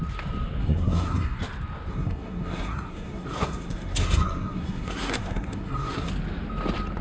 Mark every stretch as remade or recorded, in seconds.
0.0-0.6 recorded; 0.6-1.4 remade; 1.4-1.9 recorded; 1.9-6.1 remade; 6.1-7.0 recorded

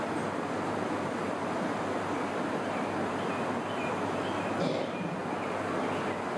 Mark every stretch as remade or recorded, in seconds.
0.0-6.4 recorded

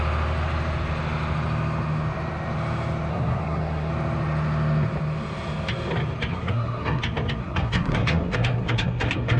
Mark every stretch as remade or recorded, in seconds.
0.0-3.1 recorded; 3.1-3.9 remade; 3.9-6.3 recorded; 6.3-7.0 remade; 7.0-7.4 recorded; 7.4-9.4 remade

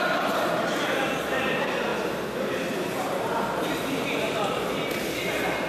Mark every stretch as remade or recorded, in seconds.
0.0-5.7 recorded

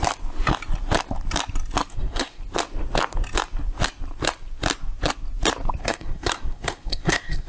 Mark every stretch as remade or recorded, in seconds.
0.0-1.9 recorded; 1.9-2.4 remade; 2.4-5.8 recorded; 5.8-7.5 remade

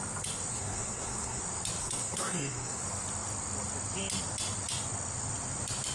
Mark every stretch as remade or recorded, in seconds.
0.0-0.5 recorded; 0.5-1.4 remade; 1.4-1.8 recorded; 1.8-2.8 remade; 2.8-5.9 recorded

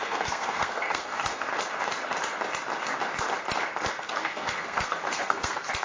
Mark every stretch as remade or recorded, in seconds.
0.0-1.5 remade; 1.5-3.9 recorded; 3.9-5.8 remade